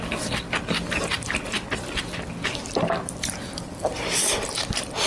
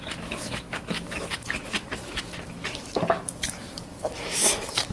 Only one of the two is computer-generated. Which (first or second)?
second